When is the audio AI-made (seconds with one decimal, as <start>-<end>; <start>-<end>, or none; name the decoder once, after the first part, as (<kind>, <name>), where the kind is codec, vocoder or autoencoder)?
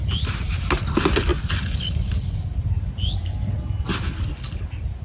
none